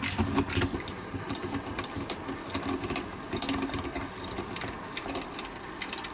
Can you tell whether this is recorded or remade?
recorded